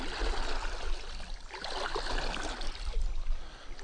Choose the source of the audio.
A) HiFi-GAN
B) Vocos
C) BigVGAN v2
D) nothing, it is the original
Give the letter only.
D